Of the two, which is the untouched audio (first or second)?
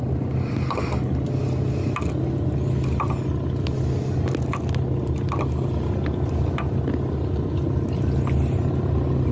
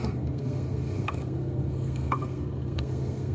first